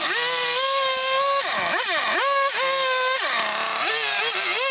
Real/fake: real